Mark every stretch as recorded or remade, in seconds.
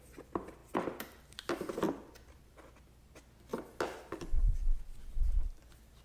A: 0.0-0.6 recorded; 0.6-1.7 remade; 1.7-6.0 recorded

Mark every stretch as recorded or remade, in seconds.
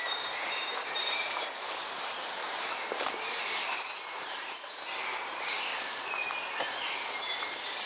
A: 0.0-5.7 remade; 5.7-6.7 recorded; 6.7-7.9 remade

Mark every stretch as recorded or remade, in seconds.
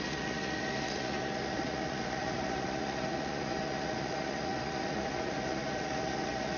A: 0.0-6.6 remade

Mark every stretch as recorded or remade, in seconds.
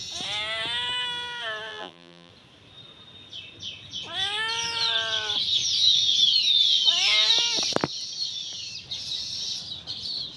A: 0.0-1.7 recorded; 1.7-2.3 remade; 2.3-10.4 recorded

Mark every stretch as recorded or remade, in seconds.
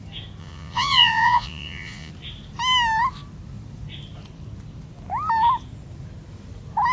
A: 0.0-0.4 recorded; 0.4-2.1 remade; 2.1-6.9 recorded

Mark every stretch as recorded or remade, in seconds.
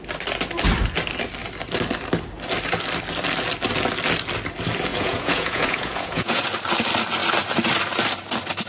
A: 0.0-4.9 recorded; 4.9-6.4 remade; 6.4-8.7 recorded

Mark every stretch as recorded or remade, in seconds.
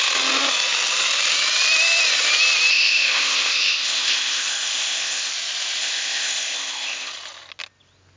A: 0.0-2.7 recorded; 2.7-5.3 remade; 5.3-5.8 recorded; 5.8-7.1 remade; 7.1-8.2 recorded